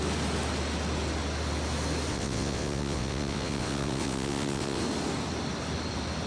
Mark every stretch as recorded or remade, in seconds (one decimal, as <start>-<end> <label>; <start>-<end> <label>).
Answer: 0.0-2.1 recorded; 2.1-4.8 remade; 4.8-6.3 recorded